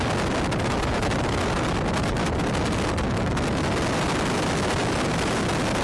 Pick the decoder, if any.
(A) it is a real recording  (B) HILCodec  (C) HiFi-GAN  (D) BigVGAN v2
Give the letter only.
A